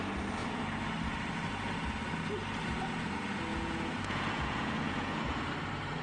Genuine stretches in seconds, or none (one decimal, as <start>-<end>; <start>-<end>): 0.0-3.5; 5.5-6.0